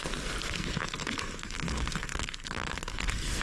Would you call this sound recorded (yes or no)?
no